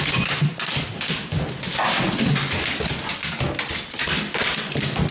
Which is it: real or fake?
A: real